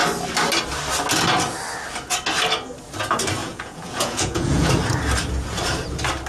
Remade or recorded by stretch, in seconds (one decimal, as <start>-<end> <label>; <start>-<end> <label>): 0.0-3.4 recorded; 3.4-4.7 remade; 4.7-6.3 recorded

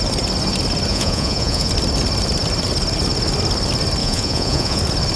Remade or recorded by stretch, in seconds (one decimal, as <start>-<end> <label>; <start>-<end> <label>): 0.0-0.9 recorded; 0.9-1.7 remade; 1.7-4.0 recorded; 4.0-4.8 remade; 4.8-5.2 recorded

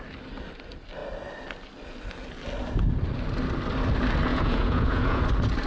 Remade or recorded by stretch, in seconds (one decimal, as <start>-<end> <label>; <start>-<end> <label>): 0.0-4.3 recorded; 4.3-5.2 remade; 5.2-5.7 recorded

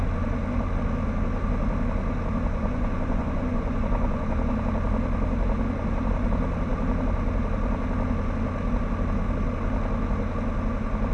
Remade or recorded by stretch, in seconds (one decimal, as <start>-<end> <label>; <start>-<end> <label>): 0.0-2.5 recorded; 2.5-4.5 remade; 4.5-11.1 recorded